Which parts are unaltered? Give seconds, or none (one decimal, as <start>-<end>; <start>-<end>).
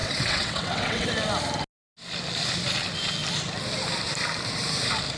1.1-5.2